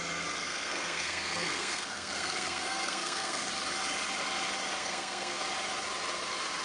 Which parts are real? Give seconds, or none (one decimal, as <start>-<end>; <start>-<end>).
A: 0.0-0.4; 3.5-4.8; 5.4-6.6